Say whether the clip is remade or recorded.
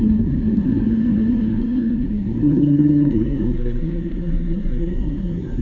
remade